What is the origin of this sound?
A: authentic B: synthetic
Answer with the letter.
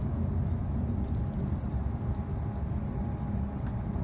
A